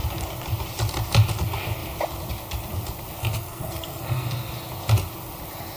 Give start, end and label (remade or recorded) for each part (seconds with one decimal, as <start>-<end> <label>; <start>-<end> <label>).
0.0-3.2 recorded; 3.2-4.5 remade; 4.5-5.8 recorded

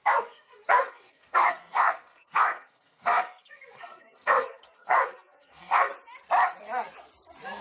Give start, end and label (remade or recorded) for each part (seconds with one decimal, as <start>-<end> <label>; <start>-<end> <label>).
0.0-5.9 remade; 5.9-7.6 recorded

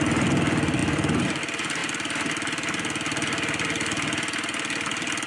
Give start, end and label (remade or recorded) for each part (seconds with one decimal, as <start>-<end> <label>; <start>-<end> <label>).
0.0-5.3 recorded

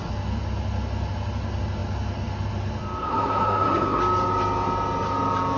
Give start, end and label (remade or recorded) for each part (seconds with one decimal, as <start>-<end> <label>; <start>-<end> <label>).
0.0-3.0 recorded; 3.0-4.0 remade; 4.0-5.6 recorded

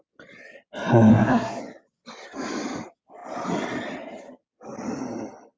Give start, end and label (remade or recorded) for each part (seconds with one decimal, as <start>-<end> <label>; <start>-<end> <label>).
0.0-1.1 recorded; 1.1-1.6 remade; 1.6-5.6 recorded

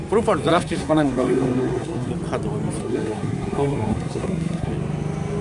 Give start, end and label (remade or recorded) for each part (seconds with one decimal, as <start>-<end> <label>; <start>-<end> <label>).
0.0-0.5 recorded; 0.5-2.1 remade; 2.1-2.8 recorded; 2.8-4.7 remade; 4.7-5.4 recorded

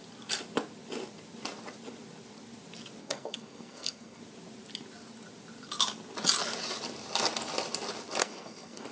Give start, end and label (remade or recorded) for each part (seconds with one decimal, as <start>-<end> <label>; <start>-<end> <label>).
0.0-3.0 recorded; 3.0-4.2 remade; 4.2-8.2 recorded; 8.2-8.9 remade

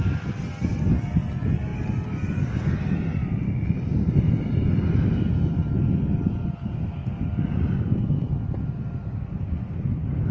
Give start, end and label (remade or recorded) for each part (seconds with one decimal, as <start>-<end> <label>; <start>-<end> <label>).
0.0-10.3 recorded